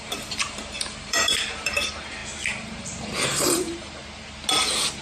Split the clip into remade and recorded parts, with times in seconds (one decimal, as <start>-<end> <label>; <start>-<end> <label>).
0.0-2.2 remade; 2.2-2.8 recorded; 2.8-4.0 remade; 4.0-5.0 recorded